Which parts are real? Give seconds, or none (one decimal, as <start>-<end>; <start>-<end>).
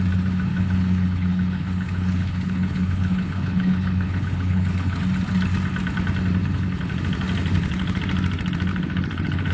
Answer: 0.0-0.5; 5.0-6.4; 7.0-7.5; 8.0-8.7